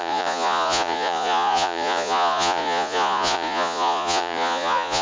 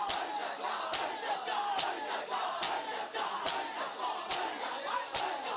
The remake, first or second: first